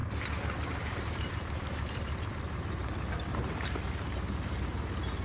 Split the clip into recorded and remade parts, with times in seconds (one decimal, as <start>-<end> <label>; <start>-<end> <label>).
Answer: 0.0-2.3 remade; 2.3-2.8 recorded; 2.8-3.5 remade; 3.5-5.2 recorded